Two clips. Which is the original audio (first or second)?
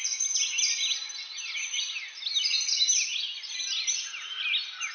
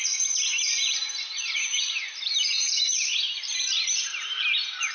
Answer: first